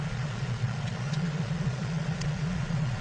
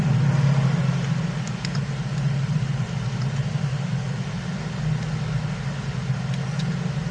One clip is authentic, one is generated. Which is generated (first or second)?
first